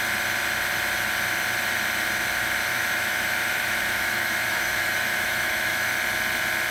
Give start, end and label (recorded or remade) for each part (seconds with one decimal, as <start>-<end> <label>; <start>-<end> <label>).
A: 0.0-2.7 recorded; 2.7-5.9 remade; 5.9-6.7 recorded